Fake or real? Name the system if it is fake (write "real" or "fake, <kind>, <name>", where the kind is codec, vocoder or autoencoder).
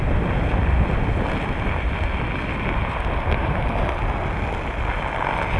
real